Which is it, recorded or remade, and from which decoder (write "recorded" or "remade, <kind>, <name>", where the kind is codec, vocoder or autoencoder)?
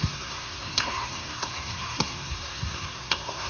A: remade, codec, SNAC